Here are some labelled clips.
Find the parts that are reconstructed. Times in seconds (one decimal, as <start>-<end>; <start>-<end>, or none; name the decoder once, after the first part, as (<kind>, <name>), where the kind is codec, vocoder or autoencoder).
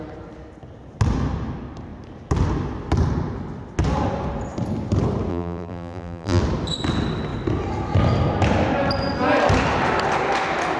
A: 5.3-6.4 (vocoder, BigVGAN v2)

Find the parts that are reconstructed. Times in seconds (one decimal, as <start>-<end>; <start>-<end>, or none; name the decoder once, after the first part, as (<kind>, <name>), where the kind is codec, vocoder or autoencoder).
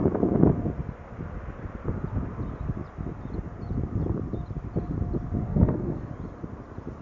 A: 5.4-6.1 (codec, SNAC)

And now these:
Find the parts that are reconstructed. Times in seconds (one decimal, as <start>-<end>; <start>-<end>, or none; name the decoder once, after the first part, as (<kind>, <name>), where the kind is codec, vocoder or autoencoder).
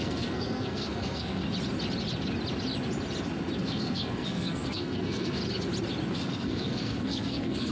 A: 0.0-1.4 (codec, SNAC); 3.6-5.4; 6.1-7.7